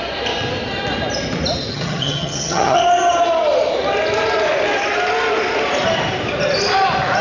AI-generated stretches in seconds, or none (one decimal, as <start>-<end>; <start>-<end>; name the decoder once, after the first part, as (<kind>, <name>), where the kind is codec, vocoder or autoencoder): 1.7-2.8 (vocoder, HiFi-GAN)